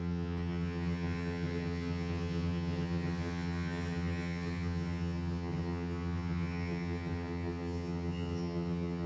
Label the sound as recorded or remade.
remade